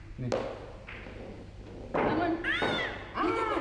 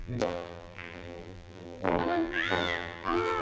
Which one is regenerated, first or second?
second